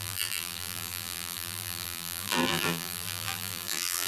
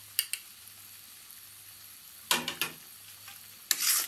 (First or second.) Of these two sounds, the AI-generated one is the first